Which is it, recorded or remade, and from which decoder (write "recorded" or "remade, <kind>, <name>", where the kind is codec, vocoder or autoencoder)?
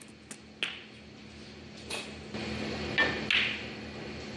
recorded